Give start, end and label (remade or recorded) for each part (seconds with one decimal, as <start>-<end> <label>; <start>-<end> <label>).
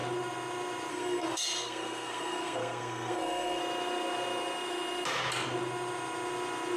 0.0-0.9 recorded; 0.9-3.6 remade; 3.6-6.8 recorded